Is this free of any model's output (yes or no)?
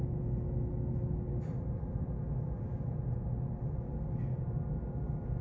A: yes